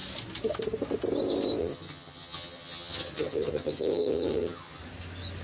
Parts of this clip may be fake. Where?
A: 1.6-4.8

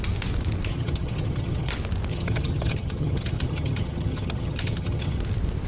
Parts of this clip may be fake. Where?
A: 0.7-1.7; 2.1-5.2

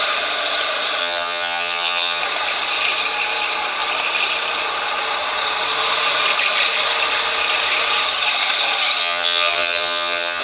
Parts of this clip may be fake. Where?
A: 1.0-2.2; 9.0-10.4